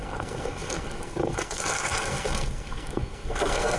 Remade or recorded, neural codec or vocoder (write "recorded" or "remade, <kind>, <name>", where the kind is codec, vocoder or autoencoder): remade, codec, SNAC